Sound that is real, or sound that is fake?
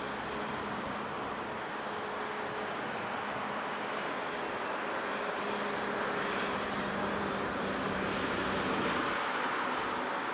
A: real